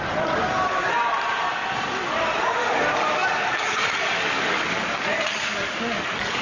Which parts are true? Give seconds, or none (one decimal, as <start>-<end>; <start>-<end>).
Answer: 0.0-2.6